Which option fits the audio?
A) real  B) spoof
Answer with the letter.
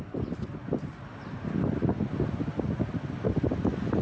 A